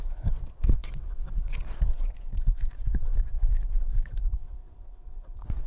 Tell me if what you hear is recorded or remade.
remade